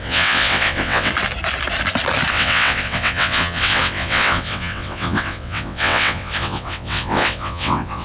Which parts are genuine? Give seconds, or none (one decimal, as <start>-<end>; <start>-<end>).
1.1-2.3